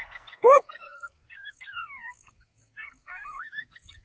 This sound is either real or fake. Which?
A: fake